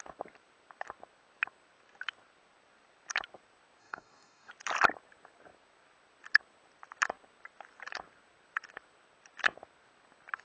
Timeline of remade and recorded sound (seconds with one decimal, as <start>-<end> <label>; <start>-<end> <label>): 0.0-3.8 recorded; 3.8-4.5 remade; 4.5-10.4 recorded